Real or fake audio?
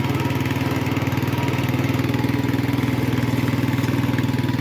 real